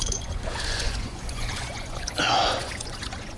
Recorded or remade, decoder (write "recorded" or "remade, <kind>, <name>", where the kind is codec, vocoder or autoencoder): remade, vocoder, Vocos